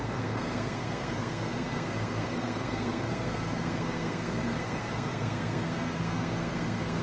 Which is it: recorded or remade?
remade